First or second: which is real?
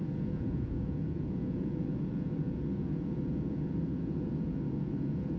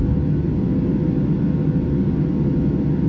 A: second